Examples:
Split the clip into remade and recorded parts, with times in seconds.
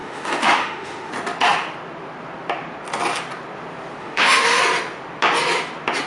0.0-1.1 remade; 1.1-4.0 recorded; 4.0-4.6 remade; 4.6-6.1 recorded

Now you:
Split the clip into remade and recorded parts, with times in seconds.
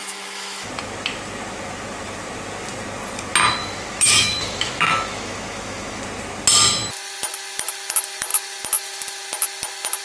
0.0-0.7 remade; 0.7-3.6 recorded; 3.6-6.0 remade; 6.0-10.0 recorded